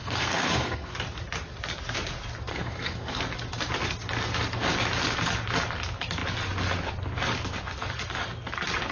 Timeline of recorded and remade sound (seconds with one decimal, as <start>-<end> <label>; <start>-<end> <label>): 0.0-0.9 remade; 0.9-2.5 recorded; 2.5-3.2 remade; 3.2-8.9 recorded